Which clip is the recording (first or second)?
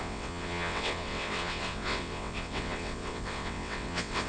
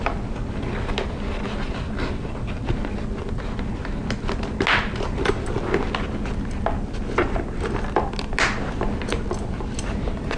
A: second